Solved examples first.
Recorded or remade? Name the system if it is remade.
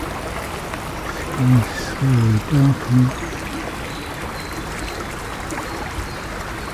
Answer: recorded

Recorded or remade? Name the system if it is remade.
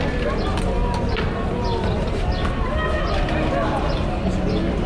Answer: recorded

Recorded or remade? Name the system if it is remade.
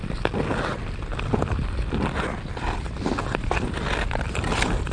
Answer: recorded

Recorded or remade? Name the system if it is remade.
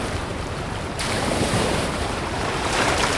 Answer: remade, vocoder, BigVGAN v2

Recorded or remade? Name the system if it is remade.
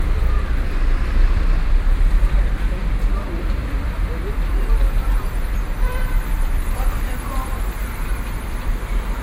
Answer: remade, vocoder, BigVGAN v2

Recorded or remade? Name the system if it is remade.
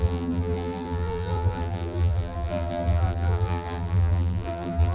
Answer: remade, vocoder, BigVGAN v2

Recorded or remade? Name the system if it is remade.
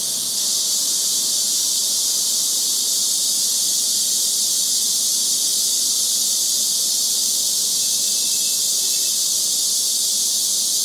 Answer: recorded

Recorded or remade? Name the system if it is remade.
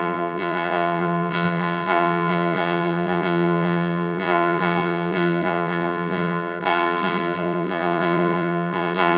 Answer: remade, vocoder, BigVGAN v2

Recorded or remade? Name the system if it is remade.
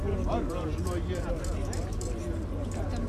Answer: recorded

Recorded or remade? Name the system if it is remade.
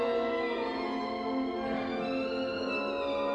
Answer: recorded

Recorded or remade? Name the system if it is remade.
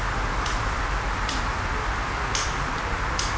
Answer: recorded